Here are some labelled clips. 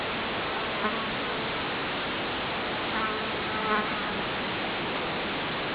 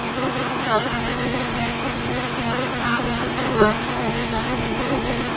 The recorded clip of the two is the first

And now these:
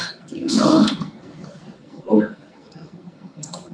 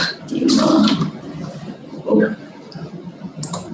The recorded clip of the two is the second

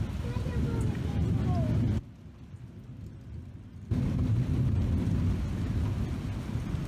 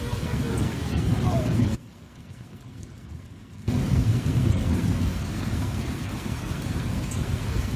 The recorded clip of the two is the first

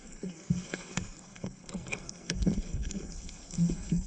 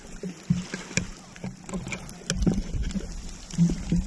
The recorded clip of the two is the second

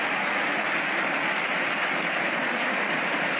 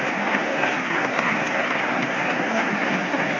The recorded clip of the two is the first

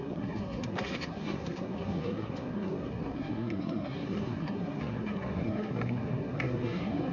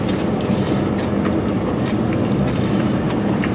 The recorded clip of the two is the second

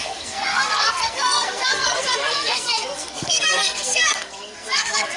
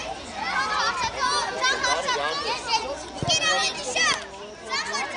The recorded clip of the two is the second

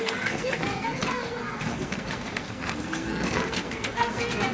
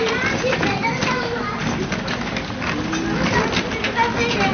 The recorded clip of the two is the second